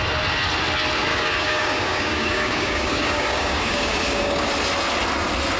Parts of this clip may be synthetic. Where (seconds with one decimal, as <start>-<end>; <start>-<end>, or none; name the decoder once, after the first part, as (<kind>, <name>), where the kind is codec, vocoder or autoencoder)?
1.1-4.5 (codec, DAC)